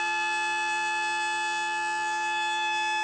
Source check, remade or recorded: remade